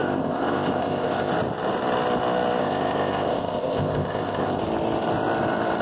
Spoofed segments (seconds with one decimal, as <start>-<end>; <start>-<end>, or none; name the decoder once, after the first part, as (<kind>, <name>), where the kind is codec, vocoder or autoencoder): 0.0-1.3 (codec, ZipCodec); 2.6-4.6